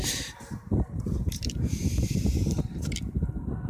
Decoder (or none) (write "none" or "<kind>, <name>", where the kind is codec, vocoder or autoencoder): vocoder, BigVGAN v2